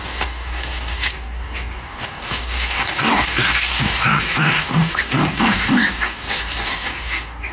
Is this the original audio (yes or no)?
no